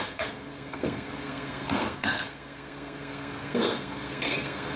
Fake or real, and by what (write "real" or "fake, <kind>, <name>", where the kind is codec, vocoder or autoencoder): fake, codec, SNAC